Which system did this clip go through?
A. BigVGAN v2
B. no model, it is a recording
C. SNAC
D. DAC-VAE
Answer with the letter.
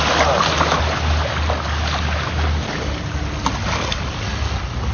B